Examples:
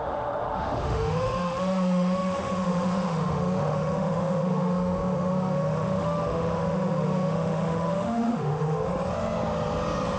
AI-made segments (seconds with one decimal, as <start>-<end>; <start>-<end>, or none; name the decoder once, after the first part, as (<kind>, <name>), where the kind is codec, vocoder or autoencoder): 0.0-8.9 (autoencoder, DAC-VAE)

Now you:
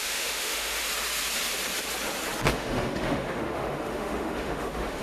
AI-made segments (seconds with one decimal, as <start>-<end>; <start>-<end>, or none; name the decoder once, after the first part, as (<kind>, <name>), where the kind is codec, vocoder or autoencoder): 0.0-0.9 (autoencoder, DAC-VAE); 2.5-5.0

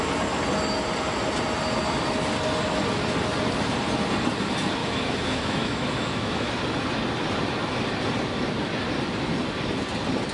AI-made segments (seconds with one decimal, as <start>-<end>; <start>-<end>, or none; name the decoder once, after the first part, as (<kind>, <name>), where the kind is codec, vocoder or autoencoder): 4.8-6.5 (autoencoder, DAC-VAE)

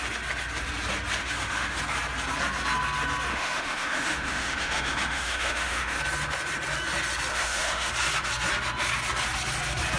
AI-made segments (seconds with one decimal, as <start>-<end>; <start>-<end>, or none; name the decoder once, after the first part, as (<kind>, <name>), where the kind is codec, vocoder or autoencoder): 1.2-1.8 (autoencoder, DAC-VAE); 3.3-6.0; 7.3-7.9